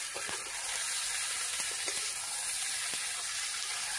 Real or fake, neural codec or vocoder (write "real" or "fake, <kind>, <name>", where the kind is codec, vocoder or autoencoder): real